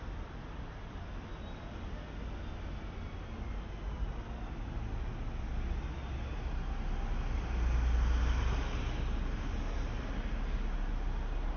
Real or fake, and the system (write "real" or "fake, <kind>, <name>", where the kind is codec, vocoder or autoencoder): real